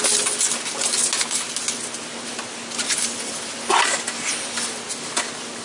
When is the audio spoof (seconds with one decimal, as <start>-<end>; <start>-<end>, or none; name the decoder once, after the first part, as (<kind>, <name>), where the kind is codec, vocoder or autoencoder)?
none